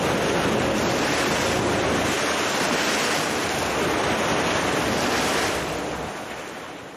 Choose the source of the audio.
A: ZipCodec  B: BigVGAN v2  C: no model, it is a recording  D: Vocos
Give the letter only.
C